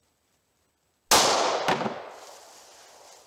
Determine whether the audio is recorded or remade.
recorded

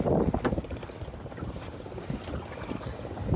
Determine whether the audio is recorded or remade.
recorded